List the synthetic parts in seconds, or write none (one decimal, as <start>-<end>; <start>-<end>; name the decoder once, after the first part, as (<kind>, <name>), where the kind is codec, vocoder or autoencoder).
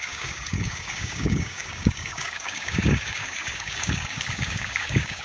0.0-5.2 (codec, DAC)